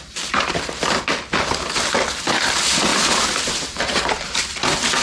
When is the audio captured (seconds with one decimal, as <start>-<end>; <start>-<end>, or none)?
0.0-5.0